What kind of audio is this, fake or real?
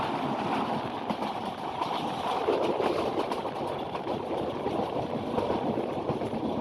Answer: real